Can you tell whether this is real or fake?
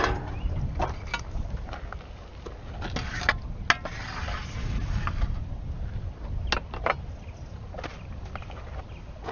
real